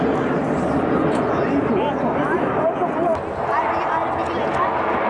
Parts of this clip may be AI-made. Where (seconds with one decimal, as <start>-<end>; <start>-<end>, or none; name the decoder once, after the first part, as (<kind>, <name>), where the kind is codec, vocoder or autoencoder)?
none